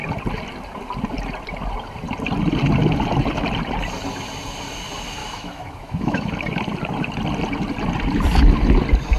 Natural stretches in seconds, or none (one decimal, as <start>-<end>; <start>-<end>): 0.0-5.2; 6.3-9.2